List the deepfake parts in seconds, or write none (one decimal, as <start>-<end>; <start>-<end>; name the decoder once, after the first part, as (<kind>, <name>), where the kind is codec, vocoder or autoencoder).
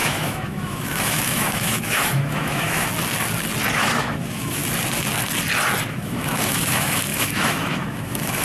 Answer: 0.0-2.9 (autoencoder, DAC-VAE); 3.8-4.6; 5.9-8.4